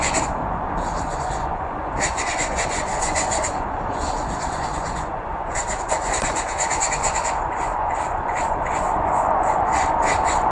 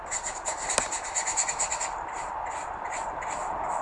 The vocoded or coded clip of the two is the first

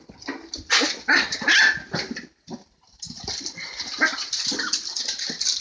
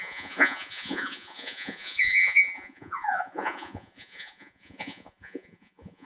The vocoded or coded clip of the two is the second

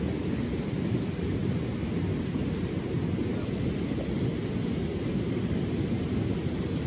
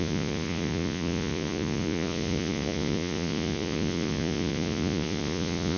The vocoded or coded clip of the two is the second